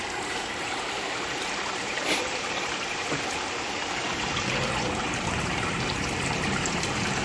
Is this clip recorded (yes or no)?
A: no